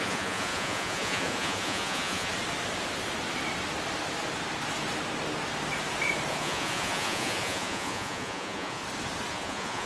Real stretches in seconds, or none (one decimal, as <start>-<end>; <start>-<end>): 2.3-6.3; 8.8-9.3